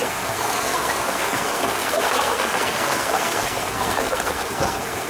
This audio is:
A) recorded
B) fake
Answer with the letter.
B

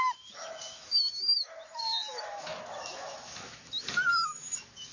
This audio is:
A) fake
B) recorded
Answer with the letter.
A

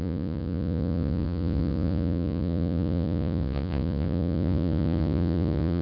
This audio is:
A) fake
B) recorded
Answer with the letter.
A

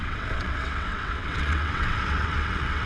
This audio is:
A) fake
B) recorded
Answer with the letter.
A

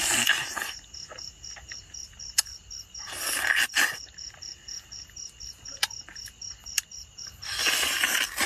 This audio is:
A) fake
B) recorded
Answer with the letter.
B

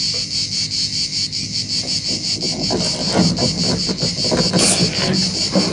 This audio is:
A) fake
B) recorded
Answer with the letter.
B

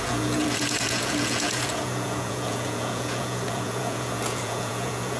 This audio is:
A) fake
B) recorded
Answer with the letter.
A